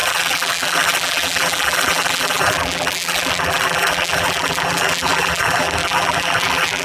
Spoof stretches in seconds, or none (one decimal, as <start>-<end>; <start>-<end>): 0.0-6.8